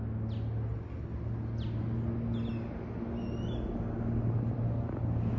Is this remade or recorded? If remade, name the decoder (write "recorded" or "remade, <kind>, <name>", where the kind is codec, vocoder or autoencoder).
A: recorded